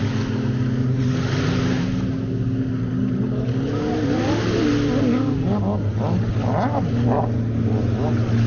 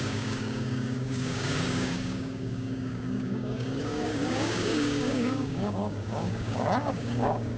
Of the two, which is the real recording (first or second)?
first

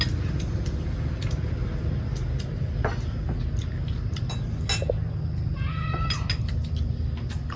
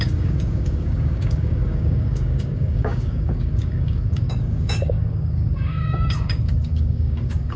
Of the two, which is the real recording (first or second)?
first